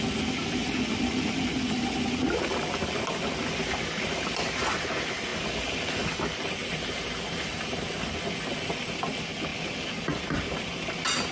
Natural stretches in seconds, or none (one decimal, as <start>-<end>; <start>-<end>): 0.0-6.6; 7.8-11.3